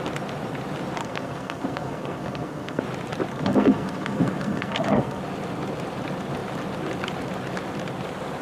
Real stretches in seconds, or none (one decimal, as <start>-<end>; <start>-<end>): 0.0-1.0; 2.8-3.3; 5.2-8.4